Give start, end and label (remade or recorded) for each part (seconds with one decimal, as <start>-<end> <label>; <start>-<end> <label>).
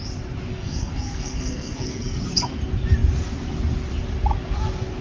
0.0-0.5 recorded; 0.5-2.2 remade; 2.2-5.0 recorded